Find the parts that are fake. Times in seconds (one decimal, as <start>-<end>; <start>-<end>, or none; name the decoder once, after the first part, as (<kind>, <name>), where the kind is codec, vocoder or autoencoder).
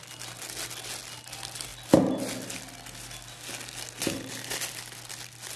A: none